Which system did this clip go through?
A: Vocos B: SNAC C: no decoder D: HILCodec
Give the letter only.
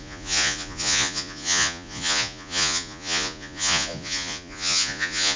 A